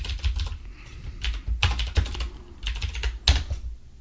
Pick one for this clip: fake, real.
real